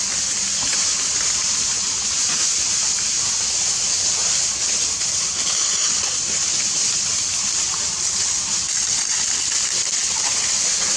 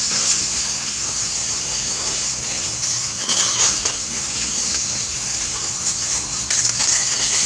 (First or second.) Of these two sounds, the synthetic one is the second